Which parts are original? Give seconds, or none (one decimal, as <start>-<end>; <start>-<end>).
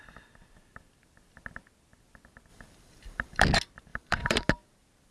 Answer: 0.0-2.5; 3.4-3.9; 4.5-5.1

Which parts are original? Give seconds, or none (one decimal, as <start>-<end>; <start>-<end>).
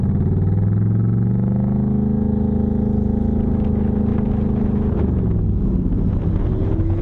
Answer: 0.0-7.0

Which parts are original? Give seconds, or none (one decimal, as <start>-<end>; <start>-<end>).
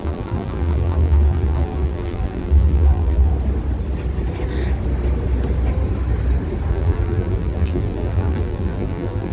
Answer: 3.3-6.7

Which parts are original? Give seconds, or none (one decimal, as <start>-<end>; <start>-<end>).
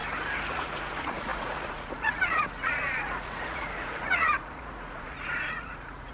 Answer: 0.0-0.5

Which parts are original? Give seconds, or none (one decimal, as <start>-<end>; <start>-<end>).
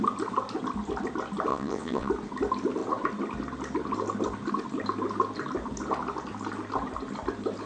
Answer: 0.0-1.5; 2.1-7.7